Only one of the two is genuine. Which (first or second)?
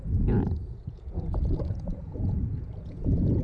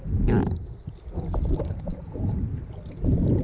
second